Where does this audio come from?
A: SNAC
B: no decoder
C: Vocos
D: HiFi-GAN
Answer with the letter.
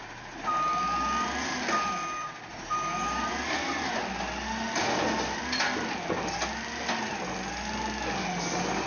B